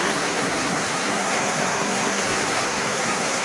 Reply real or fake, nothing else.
fake